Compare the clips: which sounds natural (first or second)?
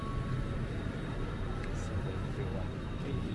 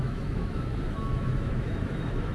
first